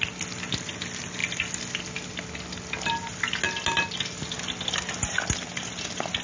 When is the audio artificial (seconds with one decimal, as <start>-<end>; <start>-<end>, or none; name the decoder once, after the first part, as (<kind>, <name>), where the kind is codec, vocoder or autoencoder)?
none